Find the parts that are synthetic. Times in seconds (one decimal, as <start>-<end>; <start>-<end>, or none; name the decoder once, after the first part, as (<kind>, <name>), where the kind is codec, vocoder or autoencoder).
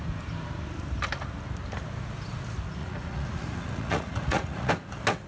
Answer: 2.8-4.7 (vocoder, Vocos)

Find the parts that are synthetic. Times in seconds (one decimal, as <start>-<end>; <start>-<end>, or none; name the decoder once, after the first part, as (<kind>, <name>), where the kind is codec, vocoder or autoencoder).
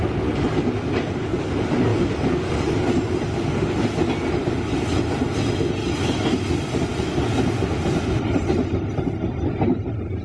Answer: none